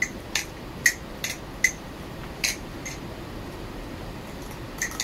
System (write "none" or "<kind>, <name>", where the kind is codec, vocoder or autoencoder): none